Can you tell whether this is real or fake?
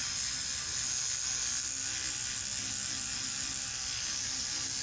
real